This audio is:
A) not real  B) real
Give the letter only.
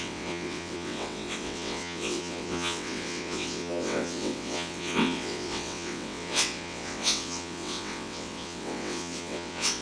A